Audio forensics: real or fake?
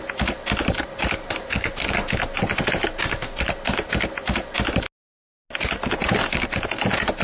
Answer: real